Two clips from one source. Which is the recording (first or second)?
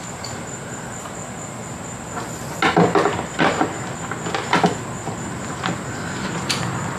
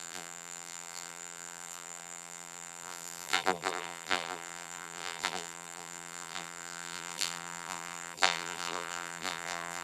first